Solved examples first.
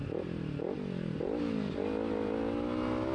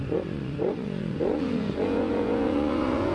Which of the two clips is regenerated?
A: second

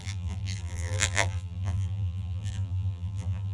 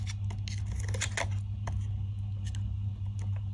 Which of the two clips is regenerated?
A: first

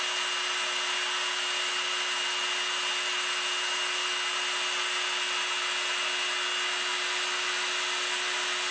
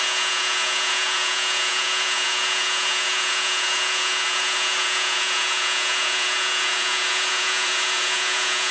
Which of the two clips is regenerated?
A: second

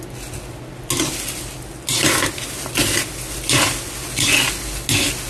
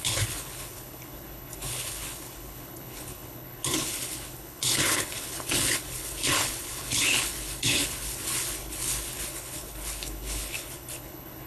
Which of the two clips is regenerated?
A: second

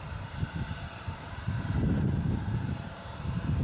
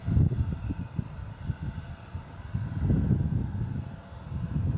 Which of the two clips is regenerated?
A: first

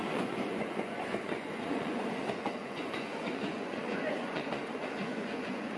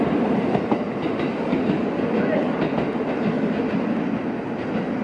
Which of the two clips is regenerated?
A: first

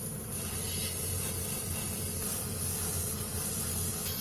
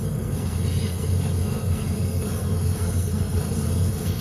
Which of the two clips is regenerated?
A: second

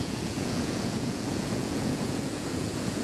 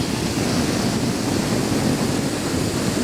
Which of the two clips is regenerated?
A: first